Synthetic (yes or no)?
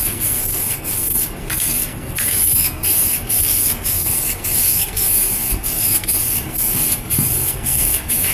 yes